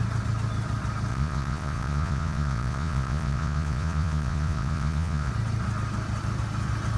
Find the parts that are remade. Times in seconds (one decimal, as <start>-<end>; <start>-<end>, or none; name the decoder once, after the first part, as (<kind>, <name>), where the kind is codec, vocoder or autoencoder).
1.1-5.3 (vocoder, Vocos)